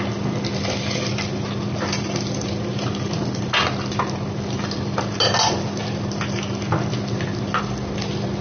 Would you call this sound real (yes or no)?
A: yes